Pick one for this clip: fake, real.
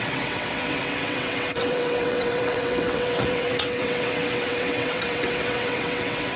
fake